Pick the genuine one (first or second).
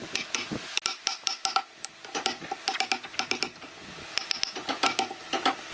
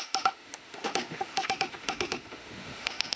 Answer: first